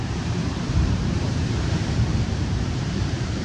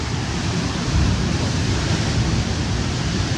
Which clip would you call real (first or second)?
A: second